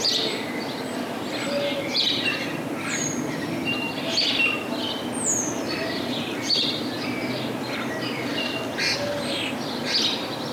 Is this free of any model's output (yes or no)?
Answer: yes